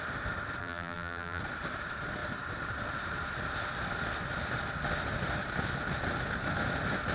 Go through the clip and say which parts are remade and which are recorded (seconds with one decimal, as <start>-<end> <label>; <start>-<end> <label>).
0.0-0.6 recorded; 0.6-1.4 remade; 1.4-7.1 recorded